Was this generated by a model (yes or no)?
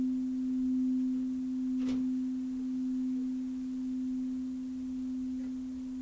no